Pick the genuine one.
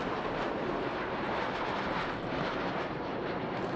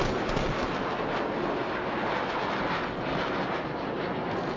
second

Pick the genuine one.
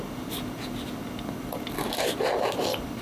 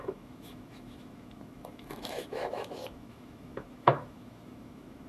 first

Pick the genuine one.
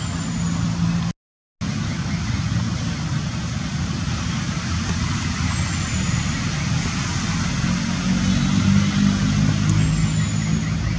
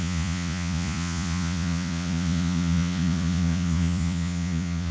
first